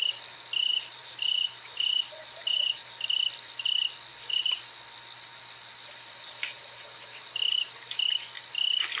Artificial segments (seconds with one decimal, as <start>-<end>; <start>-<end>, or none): 0.7-2.8; 4.1-4.6; 5.7-7.0